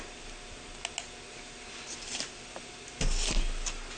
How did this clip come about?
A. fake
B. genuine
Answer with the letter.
B